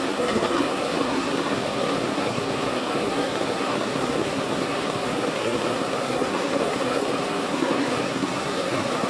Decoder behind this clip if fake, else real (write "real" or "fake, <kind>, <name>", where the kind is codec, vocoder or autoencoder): fake, codec, SNAC